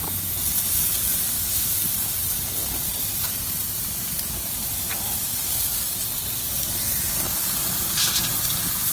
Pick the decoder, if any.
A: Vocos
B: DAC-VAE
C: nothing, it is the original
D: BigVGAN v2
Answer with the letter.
D